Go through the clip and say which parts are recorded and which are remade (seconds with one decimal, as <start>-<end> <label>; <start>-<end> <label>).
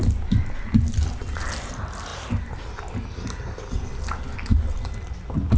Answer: 0.0-5.6 recorded